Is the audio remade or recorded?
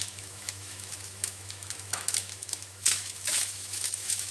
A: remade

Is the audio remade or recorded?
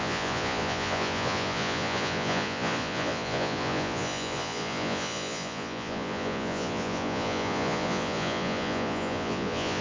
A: remade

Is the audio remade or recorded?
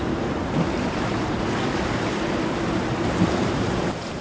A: remade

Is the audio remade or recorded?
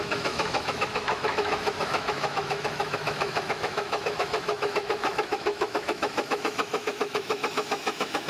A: remade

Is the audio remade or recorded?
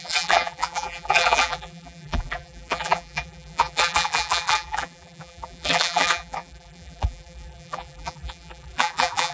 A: remade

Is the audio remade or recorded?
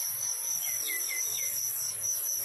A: recorded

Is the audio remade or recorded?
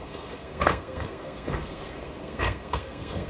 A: remade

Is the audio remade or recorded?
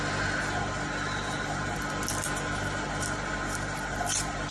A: recorded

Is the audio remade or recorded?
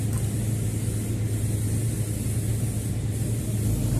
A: recorded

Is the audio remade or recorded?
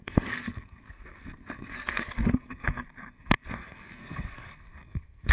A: remade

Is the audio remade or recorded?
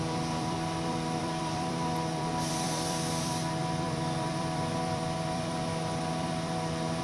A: remade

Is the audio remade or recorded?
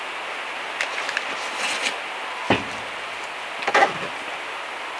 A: recorded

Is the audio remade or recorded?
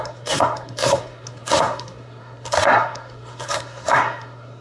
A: remade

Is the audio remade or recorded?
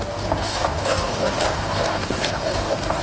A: remade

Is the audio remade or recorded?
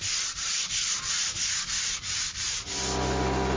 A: recorded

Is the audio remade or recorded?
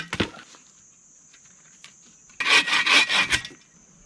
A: recorded